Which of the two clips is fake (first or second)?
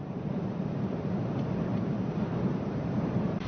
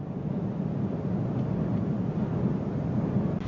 first